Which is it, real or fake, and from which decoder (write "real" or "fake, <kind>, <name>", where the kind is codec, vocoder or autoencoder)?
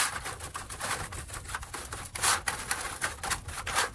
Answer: real